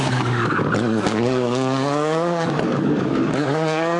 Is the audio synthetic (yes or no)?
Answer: yes